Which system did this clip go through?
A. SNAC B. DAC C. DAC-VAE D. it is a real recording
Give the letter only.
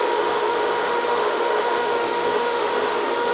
C